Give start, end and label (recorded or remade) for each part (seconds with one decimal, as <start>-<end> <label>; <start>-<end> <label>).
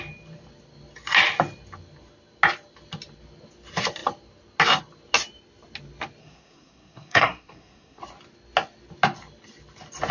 0.0-6.2 recorded; 6.2-8.0 remade; 8.0-10.1 recorded